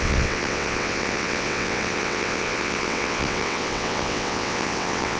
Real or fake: fake